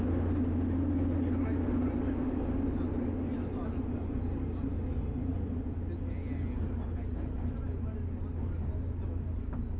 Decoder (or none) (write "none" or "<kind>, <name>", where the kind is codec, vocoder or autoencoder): none